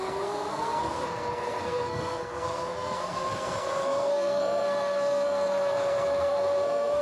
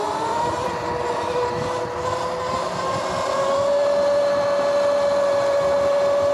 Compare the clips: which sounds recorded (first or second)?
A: second